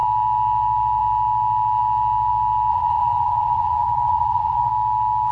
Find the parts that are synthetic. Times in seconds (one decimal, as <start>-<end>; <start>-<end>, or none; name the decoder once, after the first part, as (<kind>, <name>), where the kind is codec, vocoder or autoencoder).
2.7-4.7 (vocoder, Vocos)